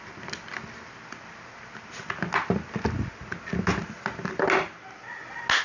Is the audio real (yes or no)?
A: yes